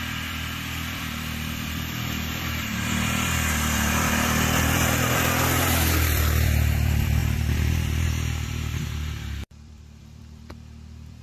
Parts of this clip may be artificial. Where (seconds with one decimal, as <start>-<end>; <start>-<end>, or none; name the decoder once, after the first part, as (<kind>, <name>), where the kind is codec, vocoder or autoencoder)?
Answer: 0.0-11.2 (vocoder, BigVGAN v2)